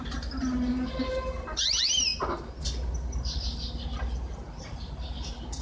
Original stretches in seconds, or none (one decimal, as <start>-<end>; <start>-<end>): none

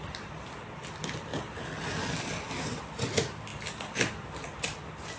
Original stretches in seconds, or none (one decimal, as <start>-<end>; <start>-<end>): 0.0-5.2

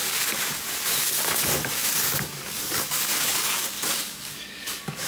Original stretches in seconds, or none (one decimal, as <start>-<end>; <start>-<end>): none

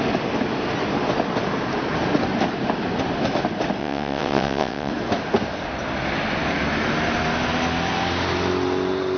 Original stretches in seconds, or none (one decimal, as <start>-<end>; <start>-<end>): 0.0-3.8; 4.9-9.2

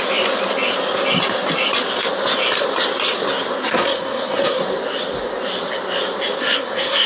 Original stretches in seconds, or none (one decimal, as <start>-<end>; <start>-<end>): 0.0-3.6; 4.6-6.4